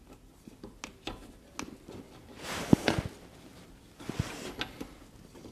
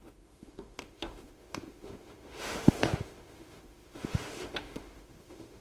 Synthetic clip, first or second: second